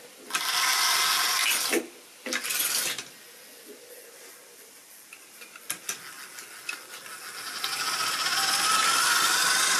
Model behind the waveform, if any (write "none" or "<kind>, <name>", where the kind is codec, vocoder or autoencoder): none